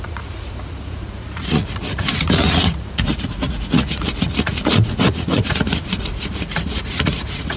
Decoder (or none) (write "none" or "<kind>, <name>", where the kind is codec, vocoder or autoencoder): vocoder, Vocos